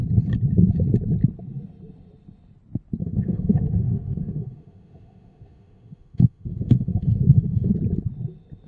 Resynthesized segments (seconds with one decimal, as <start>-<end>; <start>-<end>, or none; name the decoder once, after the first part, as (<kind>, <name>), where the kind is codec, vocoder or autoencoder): 3.0-7.7 (autoencoder, DAC-VAE)